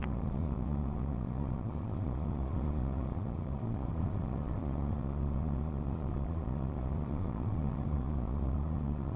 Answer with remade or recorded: remade